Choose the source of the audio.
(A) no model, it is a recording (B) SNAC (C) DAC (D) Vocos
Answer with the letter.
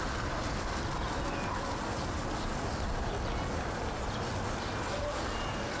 A